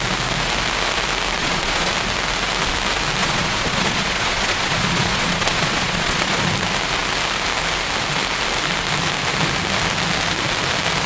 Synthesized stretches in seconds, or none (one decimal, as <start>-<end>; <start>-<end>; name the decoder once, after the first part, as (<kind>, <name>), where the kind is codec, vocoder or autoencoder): 1.4-1.9 (vocoder, Vocos); 3.2-6.5